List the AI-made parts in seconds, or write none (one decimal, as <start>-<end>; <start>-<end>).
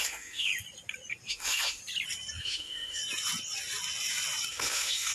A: 0.0-0.5; 1.3-1.8; 2.4-3.0; 4.5-5.1